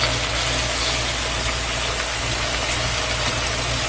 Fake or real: real